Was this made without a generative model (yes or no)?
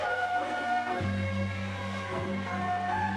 no